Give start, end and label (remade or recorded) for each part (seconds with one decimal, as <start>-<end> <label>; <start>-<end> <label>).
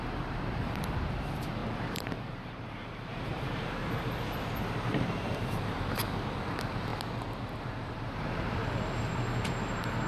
0.0-3.8 remade; 3.8-4.6 recorded; 4.6-6.9 remade; 6.9-7.6 recorded; 7.6-10.1 remade